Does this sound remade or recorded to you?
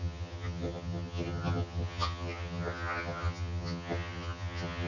remade